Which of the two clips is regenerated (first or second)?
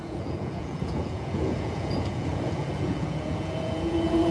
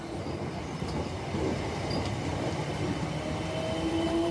first